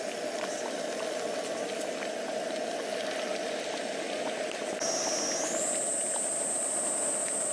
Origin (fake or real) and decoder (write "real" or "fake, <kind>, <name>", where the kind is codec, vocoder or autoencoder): real